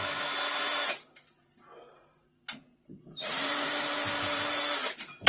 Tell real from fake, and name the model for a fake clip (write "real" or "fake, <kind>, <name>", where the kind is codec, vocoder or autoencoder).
fake, vocoder, BigVGAN v2